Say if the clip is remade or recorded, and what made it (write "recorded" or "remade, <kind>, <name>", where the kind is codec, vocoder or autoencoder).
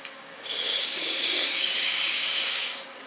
remade, codec, DAC